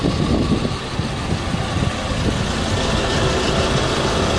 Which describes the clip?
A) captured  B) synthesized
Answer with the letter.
A